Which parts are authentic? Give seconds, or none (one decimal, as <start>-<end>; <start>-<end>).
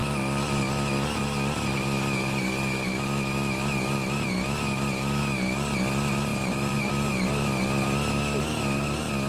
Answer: 0.0-6.3; 6.9-9.3